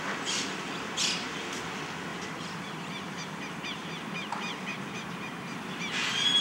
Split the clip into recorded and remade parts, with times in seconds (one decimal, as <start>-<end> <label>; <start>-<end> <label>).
0.0-2.1 recorded; 2.1-4.6 remade; 4.6-6.4 recorded